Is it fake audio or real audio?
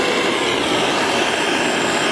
real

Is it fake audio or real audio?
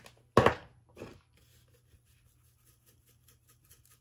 real